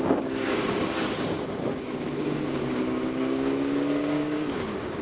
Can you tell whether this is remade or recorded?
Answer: remade